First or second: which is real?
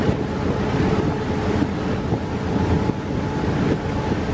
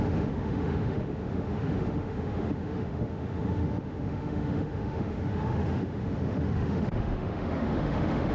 first